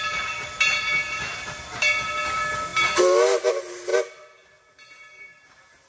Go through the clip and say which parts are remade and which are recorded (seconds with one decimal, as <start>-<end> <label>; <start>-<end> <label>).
0.0-2.7 recorded; 2.7-3.5 remade; 3.5-5.9 recorded